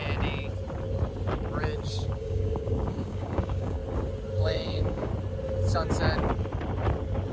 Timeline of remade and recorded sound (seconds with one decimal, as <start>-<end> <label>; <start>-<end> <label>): 0.0-1.9 recorded; 1.9-3.8 remade; 3.8-4.4 recorded; 4.4-5.1 remade; 5.1-7.3 recorded